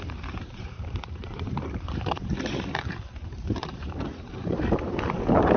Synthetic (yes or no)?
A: yes